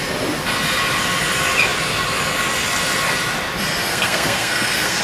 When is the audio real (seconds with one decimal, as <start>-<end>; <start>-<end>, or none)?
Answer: 0.0-3.9